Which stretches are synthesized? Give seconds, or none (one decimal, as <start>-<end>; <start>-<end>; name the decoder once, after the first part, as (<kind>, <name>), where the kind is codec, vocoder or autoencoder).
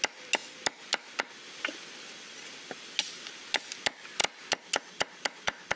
none